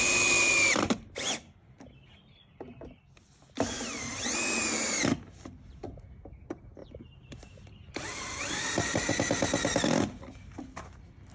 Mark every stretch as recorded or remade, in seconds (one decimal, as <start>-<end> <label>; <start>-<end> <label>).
0.0-6.8 recorded; 6.8-9.1 remade; 9.1-11.3 recorded